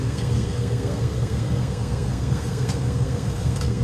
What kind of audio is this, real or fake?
fake